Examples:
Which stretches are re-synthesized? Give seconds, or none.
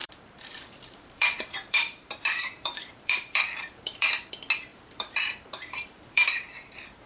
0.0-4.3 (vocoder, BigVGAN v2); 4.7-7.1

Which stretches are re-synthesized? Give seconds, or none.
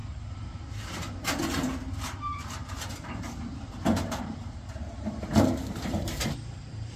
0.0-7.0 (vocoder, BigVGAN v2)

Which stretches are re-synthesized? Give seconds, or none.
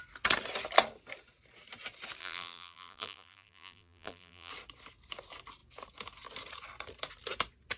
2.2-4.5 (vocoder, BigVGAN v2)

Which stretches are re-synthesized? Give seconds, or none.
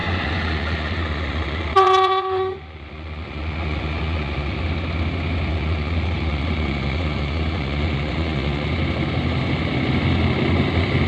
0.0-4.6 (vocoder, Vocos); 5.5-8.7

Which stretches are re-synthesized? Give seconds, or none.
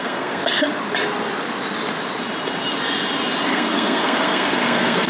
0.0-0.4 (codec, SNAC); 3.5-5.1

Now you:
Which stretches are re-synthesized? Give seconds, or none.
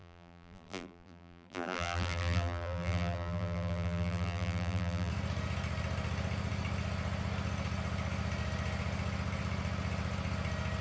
0.0-5.1 (vocoder, BigVGAN v2)